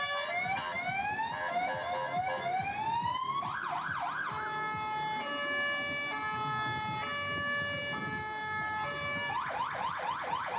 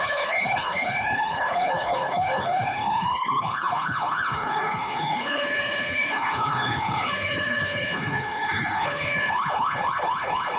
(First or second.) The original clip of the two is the first